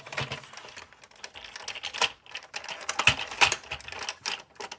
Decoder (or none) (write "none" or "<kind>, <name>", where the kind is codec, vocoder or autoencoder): none